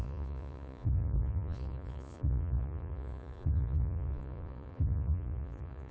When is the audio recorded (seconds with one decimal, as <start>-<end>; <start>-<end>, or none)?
none

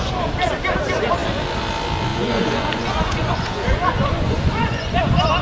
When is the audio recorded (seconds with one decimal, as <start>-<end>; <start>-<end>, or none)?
0.0-2.1; 5.0-5.4

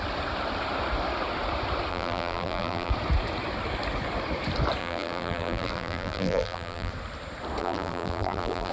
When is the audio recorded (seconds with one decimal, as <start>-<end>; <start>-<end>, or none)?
0.0-1.9; 2.9-4.8; 6.9-7.6

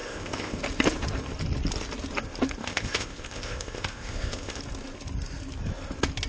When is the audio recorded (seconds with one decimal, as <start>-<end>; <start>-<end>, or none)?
0.6-2.6; 4.6-6.3

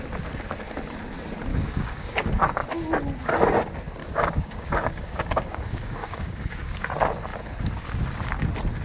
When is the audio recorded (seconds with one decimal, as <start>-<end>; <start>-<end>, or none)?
0.0-1.5; 2.2-4.0; 6.7-8.8